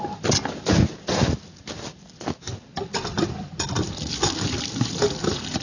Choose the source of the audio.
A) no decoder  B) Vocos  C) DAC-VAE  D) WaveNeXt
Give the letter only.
A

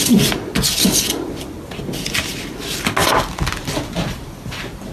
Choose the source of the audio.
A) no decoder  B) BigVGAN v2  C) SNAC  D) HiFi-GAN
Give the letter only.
A